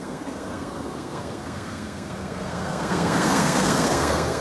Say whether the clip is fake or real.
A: fake